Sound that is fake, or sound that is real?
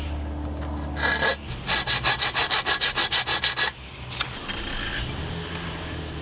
real